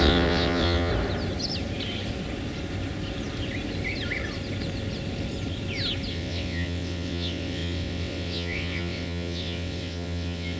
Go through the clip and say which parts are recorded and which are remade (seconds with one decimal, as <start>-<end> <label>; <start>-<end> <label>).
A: 0.0-0.9 remade; 0.9-6.1 recorded; 6.1-10.6 remade

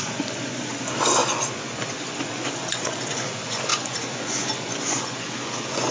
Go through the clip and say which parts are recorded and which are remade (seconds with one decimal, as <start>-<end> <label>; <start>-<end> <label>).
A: 0.0-5.9 remade

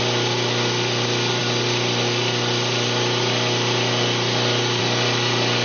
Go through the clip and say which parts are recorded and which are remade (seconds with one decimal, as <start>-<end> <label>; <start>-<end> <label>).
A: 0.0-5.6 recorded